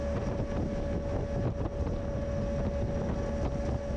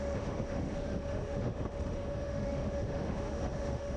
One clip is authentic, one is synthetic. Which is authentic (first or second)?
first